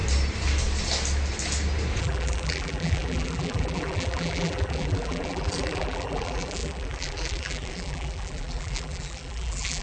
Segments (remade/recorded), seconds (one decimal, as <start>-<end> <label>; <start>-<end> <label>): 0.0-2.0 recorded; 2.0-9.8 remade